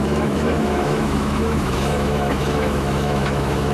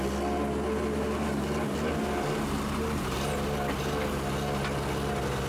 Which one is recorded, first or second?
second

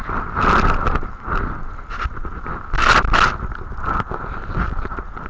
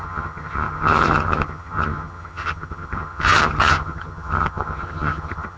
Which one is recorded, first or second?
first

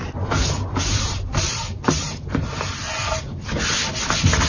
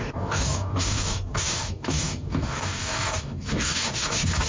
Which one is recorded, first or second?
first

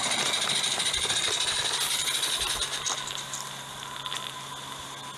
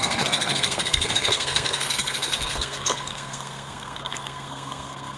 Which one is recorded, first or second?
first